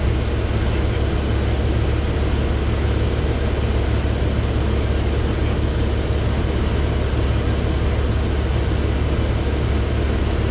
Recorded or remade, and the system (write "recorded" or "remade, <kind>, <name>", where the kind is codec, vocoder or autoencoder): recorded